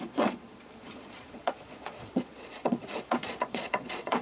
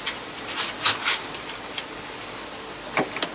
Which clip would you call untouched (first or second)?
second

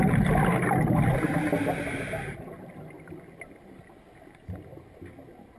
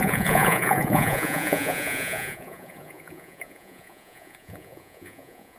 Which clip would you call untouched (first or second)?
first